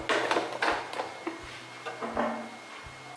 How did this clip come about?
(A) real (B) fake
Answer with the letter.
A